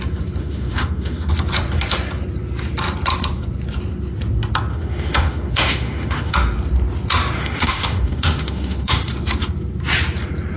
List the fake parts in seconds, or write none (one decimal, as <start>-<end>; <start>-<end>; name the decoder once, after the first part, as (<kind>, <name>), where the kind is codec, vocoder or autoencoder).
0.4-1.3 (autoencoder, DAC-VAE); 4.7-6.3; 7.4-9.1

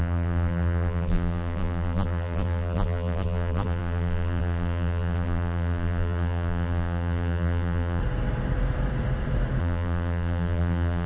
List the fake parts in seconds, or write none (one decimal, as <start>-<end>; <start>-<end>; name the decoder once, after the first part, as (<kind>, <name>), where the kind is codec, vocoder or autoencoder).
0.0-8.0 (vocoder, BigVGAN v2); 9.6-11.1